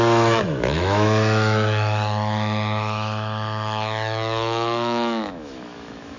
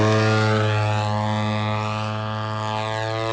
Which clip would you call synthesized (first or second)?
first